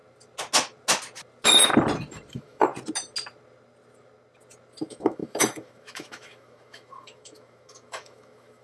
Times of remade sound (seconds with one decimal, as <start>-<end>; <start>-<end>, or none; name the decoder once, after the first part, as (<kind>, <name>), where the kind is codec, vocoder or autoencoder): 2.3-2.7 (autoencoder, DAC-VAE); 4.8-8.6